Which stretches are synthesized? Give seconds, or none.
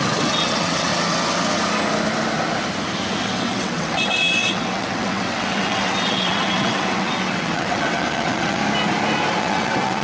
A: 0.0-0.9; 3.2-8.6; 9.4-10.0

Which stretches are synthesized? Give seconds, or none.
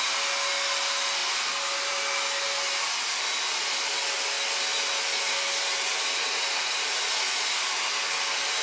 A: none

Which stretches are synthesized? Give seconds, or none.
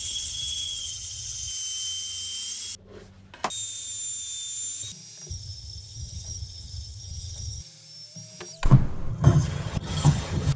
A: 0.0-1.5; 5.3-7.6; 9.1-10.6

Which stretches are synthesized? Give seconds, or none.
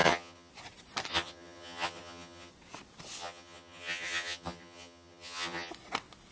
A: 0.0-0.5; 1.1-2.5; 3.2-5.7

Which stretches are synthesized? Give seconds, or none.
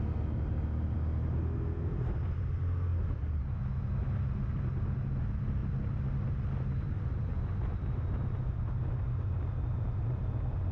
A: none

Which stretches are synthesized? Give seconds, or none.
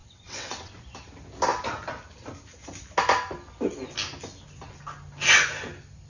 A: 0.0-0.7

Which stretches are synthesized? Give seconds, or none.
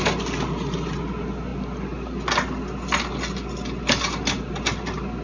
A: none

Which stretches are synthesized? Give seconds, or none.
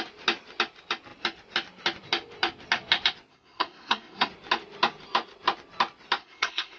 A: 3.3-4.3; 6.2-6.8